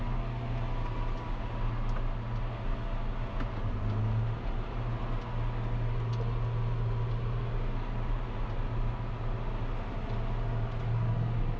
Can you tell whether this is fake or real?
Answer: real